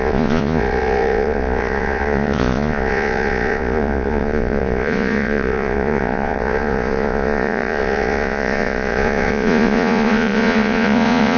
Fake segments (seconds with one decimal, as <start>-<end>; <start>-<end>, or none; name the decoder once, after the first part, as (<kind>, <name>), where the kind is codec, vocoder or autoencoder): 0.0-11.4 (vocoder, Vocos)